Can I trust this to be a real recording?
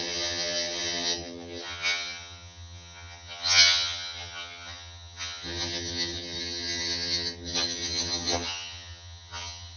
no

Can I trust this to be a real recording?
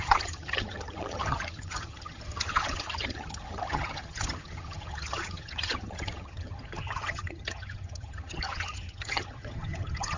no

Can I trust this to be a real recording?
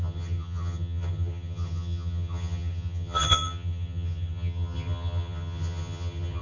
no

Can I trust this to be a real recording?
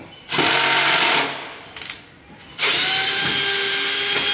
yes